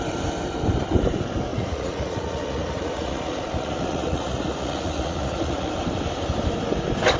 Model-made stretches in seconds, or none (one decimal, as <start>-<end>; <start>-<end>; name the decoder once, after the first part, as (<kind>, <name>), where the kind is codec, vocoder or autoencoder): 1.5-5.7 (vocoder, Vocos)